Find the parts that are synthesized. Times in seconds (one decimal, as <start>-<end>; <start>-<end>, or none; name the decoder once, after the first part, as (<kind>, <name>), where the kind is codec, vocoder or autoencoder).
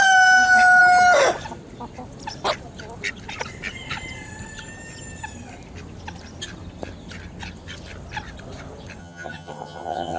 9.0-10.2 (vocoder, HiFi-GAN)